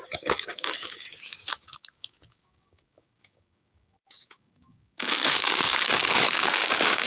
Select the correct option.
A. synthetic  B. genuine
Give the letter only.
A